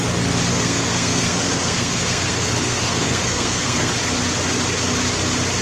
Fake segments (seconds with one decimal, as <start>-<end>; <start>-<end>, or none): 0.5-3.9

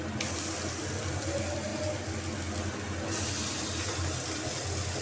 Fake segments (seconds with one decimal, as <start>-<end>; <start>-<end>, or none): none

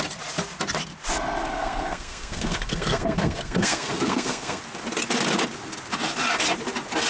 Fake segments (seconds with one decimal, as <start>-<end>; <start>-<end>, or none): 1.5-4.6

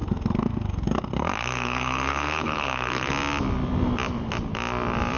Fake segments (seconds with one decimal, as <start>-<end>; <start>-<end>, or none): 0.0-3.1

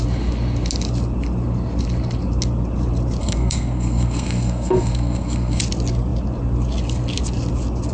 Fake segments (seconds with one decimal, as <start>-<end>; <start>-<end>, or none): 3.2-5.6

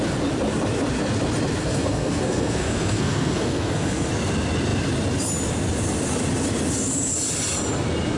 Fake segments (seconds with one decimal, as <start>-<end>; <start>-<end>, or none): 1.6-4.1

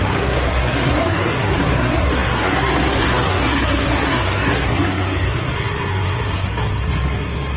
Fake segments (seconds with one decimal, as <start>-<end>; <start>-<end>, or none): 0.0-7.6